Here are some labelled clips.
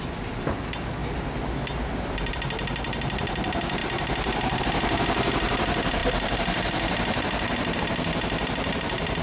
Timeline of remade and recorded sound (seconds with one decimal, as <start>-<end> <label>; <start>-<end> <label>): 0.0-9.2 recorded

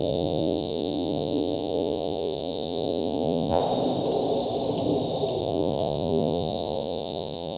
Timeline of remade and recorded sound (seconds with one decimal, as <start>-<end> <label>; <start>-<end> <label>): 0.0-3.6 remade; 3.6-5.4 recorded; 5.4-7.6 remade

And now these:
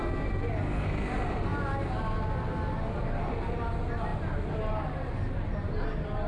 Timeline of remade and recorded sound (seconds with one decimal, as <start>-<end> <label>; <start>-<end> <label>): 0.0-6.3 recorded